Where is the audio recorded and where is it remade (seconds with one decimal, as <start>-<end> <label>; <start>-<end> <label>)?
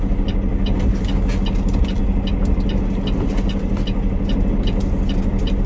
0.0-5.7 recorded